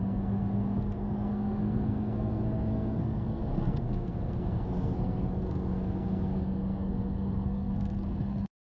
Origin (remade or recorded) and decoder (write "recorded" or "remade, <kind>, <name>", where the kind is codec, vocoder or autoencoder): remade, codec, SNAC